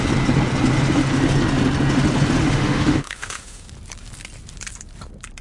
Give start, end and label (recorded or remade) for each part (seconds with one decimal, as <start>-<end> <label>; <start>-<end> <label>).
0.0-2.4 recorded; 2.4-3.7 remade; 3.7-5.4 recorded